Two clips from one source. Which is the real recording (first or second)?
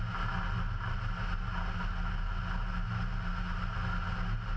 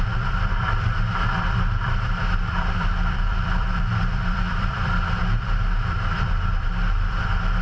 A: first